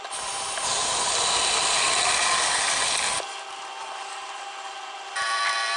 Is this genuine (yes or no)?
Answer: yes